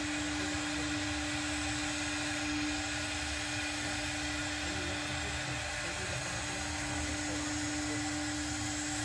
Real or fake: real